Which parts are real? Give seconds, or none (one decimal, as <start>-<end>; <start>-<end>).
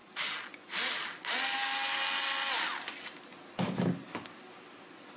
0.0-5.2